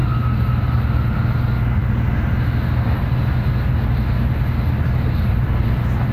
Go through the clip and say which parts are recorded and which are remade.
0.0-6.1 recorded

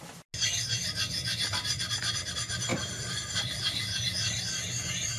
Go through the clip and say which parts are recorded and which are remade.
0.0-2.7 recorded; 2.7-3.6 remade; 3.6-5.2 recorded

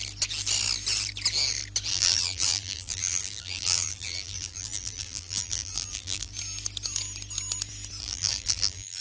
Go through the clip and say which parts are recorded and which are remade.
0.0-1.9 recorded; 1.9-6.3 remade; 6.3-8.0 recorded; 8.0-9.0 remade

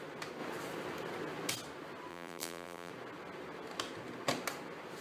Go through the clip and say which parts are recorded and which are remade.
0.0-2.1 recorded; 2.1-2.9 remade; 2.9-5.0 recorded

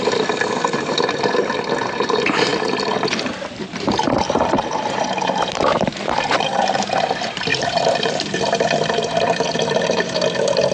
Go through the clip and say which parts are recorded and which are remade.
0.0-2.5 remade; 2.5-3.6 recorded; 3.6-10.7 remade

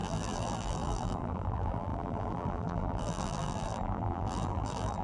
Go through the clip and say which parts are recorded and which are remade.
0.0-5.0 remade

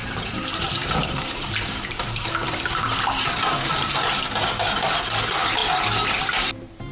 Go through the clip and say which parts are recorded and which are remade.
0.0-4.1 remade; 4.1-6.9 recorded

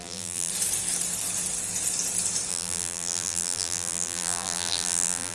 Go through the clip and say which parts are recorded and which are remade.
0.0-0.5 remade; 0.5-2.5 recorded; 2.5-5.3 remade